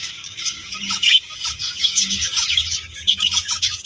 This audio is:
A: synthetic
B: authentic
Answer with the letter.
A